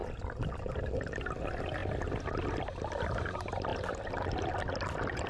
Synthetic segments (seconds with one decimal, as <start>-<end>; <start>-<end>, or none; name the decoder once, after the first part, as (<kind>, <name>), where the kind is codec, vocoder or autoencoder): none